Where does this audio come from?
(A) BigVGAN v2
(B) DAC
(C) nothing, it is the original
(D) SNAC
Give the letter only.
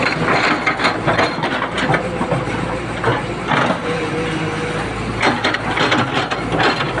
C